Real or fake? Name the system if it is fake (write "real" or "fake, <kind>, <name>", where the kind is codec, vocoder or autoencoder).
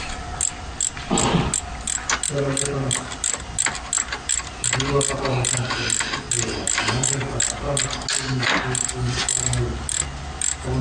real